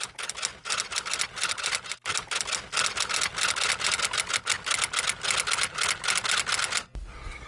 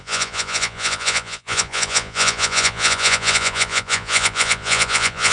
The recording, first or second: first